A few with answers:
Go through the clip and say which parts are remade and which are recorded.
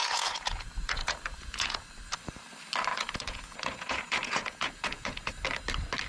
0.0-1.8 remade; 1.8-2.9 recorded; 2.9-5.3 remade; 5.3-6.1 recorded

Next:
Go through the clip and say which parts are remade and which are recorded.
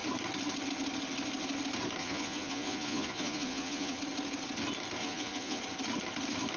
0.0-2.0 recorded; 2.0-4.0 remade; 4.0-5.0 recorded; 5.0-5.6 remade; 5.6-6.6 recorded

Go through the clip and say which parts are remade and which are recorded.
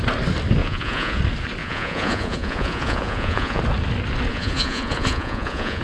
0.0-0.6 recorded; 0.6-1.2 remade; 1.2-1.6 recorded; 1.6-3.6 remade; 3.6-4.3 recorded; 4.3-5.8 remade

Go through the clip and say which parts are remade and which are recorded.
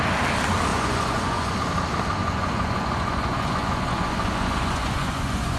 0.0-0.7 recorded; 0.7-1.5 remade; 1.5-2.2 recorded; 2.2-5.6 remade